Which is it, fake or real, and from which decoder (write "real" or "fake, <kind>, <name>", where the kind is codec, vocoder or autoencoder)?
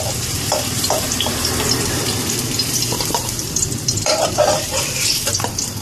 fake, vocoder, BigVGAN v2